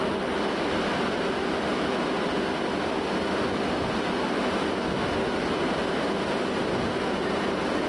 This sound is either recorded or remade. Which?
recorded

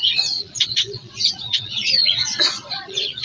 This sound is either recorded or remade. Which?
remade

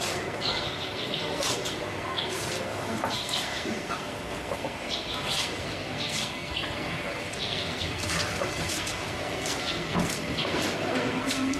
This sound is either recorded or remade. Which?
remade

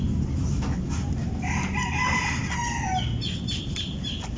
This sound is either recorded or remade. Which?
recorded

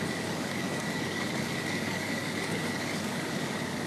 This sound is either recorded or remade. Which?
remade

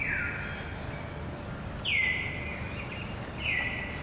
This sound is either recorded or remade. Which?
recorded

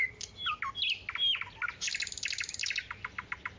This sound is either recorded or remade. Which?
recorded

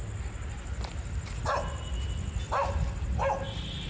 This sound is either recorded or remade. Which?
recorded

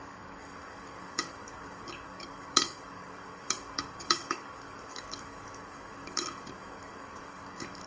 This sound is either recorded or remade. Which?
remade